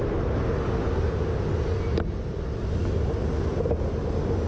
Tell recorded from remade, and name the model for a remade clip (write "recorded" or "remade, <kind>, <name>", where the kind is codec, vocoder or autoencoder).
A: recorded